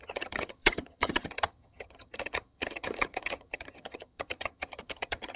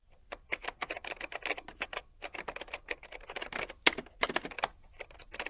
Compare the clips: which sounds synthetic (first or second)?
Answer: first